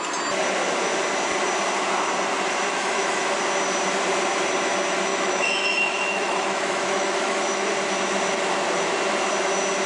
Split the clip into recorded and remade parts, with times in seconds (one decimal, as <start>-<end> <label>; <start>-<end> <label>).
0.0-2.7 recorded; 2.7-3.2 remade; 3.2-5.1 recorded; 5.1-7.7 remade; 7.7-9.9 recorded